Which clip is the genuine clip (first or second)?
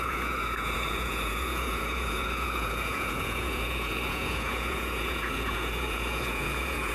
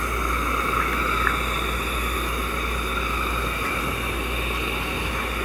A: second